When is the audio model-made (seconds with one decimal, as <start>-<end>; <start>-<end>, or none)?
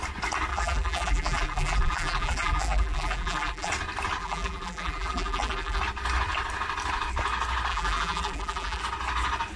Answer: 0.5-3.7; 4.2-5.8; 7.7-8.8